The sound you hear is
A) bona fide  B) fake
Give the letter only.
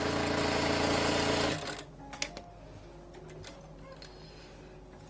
A